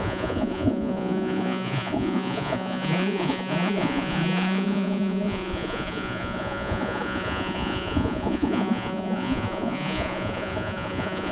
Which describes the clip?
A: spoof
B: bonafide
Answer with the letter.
A